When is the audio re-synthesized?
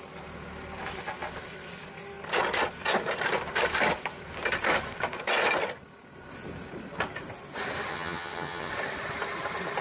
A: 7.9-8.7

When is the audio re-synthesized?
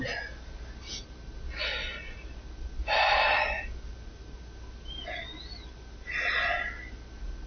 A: none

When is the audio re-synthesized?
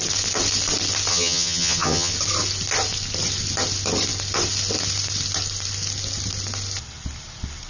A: 1.1-2.1